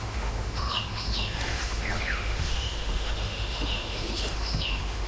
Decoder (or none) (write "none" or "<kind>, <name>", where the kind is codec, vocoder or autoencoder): autoencoder, DAC-VAE